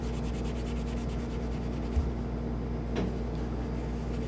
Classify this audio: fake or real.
real